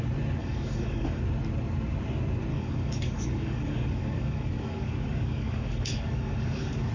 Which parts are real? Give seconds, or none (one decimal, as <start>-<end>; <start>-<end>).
0.0-0.4; 1.2-2.5